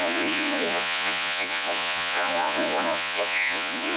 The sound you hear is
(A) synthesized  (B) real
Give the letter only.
A